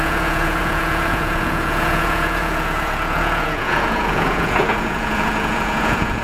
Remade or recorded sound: remade